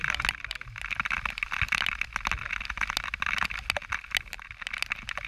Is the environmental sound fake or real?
real